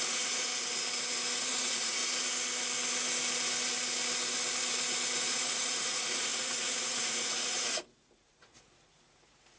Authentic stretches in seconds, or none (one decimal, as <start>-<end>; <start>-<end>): 0.5-1.4; 2.0-5.2